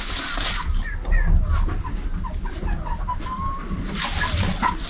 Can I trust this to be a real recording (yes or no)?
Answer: yes